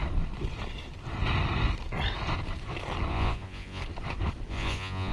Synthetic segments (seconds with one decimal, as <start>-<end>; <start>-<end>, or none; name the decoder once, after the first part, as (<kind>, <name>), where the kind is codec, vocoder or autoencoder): 3.1-3.8 (vocoder, Vocos); 4.5-5.1